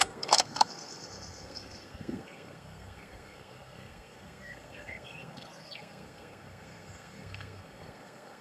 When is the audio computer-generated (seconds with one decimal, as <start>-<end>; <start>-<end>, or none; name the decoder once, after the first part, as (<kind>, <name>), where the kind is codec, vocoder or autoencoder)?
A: 0.0-8.4 (codec, SNAC)